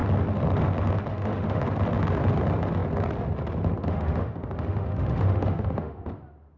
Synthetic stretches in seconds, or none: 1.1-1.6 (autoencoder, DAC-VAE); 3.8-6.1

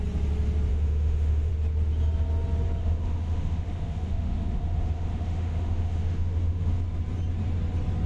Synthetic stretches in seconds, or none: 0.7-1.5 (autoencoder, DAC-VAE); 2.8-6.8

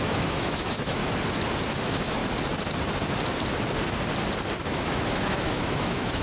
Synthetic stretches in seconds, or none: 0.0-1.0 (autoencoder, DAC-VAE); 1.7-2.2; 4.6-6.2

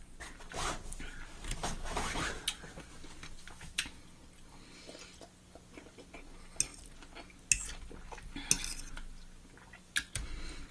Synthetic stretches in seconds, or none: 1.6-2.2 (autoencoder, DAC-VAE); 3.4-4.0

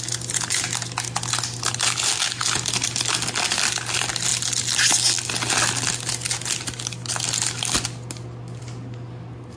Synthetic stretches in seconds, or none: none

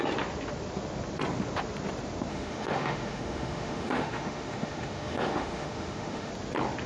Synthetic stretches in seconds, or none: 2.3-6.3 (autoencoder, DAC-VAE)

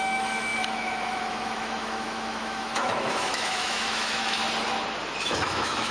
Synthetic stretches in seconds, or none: 0.0-4.4 (autoencoder, DAC-VAE); 5.2-5.9